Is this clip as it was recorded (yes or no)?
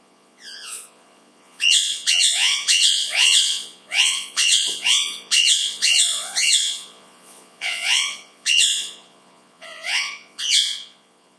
no